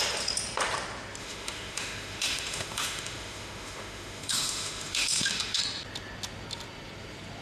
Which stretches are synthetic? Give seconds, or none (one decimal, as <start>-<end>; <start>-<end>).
1.2-5.6